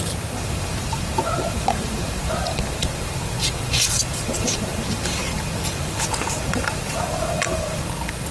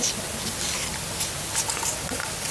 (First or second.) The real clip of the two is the second